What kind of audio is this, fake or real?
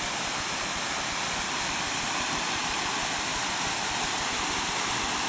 fake